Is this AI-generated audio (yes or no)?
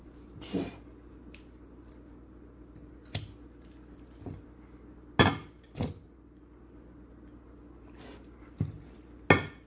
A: no